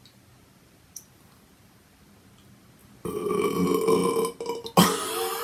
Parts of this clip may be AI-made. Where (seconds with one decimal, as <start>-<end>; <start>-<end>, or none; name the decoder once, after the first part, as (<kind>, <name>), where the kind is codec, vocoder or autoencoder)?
none